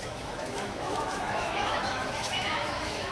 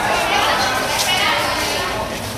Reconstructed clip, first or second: first